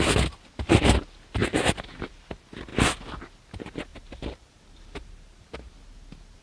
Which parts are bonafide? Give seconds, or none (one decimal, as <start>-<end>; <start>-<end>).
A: 0.0-1.4; 2.1-3.9; 5.7-6.4